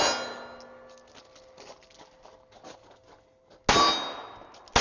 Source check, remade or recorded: recorded